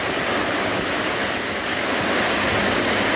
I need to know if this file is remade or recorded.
recorded